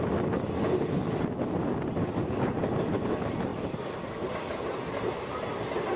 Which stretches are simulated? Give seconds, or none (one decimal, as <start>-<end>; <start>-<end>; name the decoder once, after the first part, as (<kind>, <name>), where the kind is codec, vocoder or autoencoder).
none